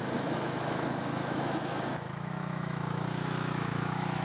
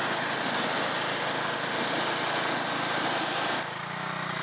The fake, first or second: first